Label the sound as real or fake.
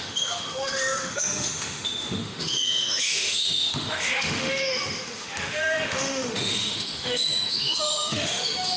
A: fake